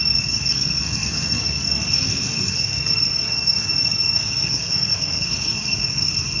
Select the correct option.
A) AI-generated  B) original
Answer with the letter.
A